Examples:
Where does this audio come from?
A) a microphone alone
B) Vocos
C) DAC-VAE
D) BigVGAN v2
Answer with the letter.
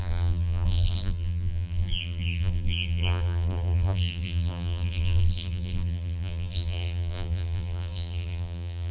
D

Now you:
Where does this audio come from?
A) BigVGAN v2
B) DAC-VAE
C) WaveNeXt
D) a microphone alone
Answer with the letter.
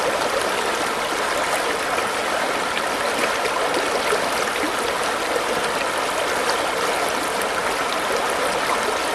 D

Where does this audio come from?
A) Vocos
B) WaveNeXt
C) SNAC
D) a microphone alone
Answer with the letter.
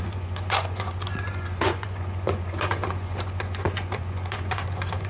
A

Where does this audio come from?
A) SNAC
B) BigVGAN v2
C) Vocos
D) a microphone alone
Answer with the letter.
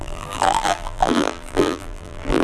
B